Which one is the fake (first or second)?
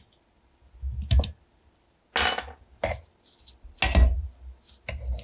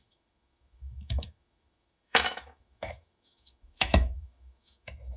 second